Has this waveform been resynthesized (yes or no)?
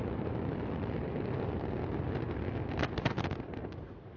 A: no